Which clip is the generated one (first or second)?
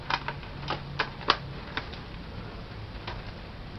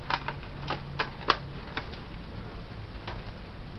first